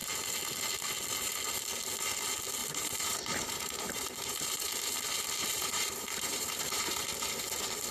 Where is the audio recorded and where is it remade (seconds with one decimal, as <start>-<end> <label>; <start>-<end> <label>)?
0.0-2.6 recorded; 2.6-7.0 remade; 7.0-7.9 recorded